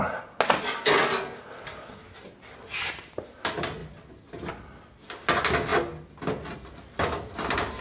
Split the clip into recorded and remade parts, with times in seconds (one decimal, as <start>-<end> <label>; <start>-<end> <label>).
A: 0.0-7.8 recorded